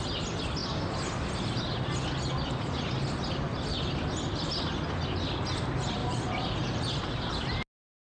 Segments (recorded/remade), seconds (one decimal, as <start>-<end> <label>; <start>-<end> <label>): 0.0-6.0 recorded; 6.0-7.3 remade; 7.3-8.1 recorded